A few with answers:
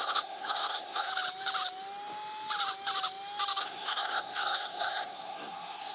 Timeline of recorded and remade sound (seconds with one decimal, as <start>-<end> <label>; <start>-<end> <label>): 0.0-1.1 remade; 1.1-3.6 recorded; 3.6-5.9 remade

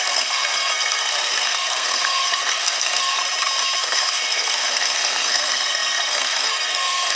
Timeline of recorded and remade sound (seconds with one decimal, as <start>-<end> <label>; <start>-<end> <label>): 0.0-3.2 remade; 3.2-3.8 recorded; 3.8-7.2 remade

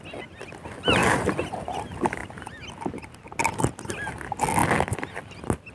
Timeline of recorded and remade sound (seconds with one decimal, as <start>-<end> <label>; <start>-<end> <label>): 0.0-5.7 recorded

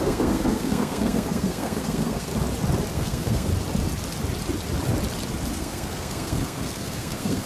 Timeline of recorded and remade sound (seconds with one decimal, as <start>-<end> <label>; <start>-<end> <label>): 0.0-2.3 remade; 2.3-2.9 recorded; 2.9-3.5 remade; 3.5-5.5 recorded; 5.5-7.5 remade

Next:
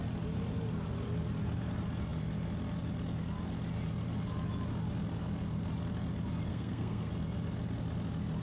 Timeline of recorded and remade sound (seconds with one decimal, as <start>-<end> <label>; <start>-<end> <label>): 0.0-6.5 recorded; 6.5-7.1 remade; 7.1-8.4 recorded